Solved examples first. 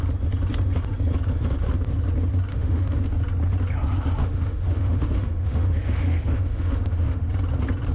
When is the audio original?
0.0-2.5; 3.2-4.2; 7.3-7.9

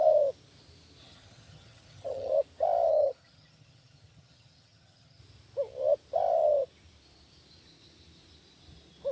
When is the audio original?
0.0-1.0; 2.3-2.9; 5.2-9.1

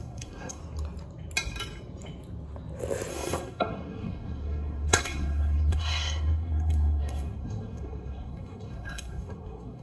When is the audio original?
0.6-3.1

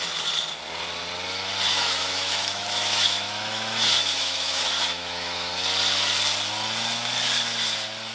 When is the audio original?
0.0-1.7; 5.5-8.1

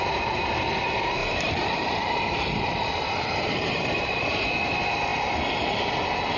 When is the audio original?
0.0-1.2; 4.3-5.1; 5.8-6.4

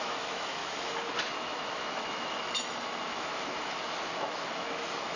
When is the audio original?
0.6-1.4